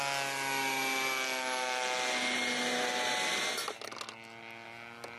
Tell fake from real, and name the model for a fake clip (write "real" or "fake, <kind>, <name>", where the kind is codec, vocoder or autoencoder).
real